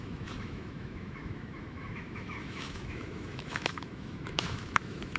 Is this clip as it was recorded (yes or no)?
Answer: no